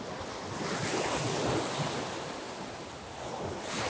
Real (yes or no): yes